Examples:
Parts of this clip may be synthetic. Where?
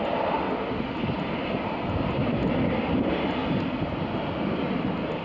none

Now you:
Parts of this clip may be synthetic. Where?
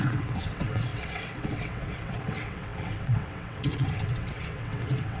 0.0-5.2 (vocoder, WaveNeXt)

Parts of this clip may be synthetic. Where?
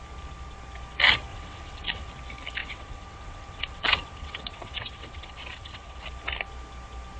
1.3-2.1 (vocoder, WaveNeXt); 2.6-6.0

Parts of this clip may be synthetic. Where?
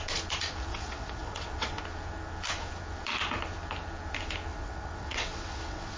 0.7-1.8 (vocoder, WaveNeXt); 4.5-6.0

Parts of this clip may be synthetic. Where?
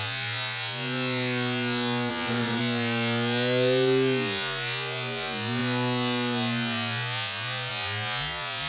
2.1-2.6 (vocoder, WaveNeXt)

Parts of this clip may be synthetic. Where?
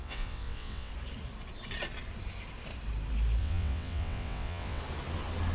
0.0-0.9 (vocoder, WaveNeXt); 3.4-4.8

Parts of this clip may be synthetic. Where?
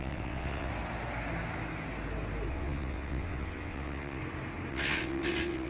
0.0-0.7 (vocoder, WaveNeXt); 2.5-4.2; 4.7-5.7